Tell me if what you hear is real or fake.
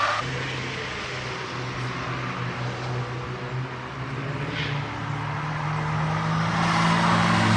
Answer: real